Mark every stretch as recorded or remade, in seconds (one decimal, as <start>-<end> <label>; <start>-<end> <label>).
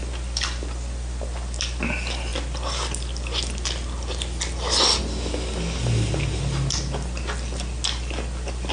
0.0-8.7 recorded